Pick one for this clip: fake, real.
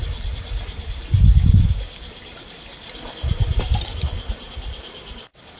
fake